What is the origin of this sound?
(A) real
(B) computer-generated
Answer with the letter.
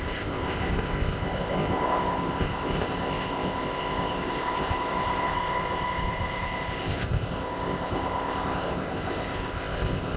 B